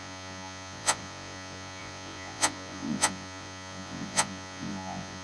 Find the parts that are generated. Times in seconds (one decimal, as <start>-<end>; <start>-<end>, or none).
0.0-5.2